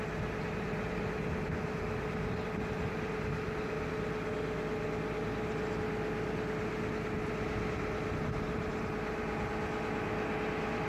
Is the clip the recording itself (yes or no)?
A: yes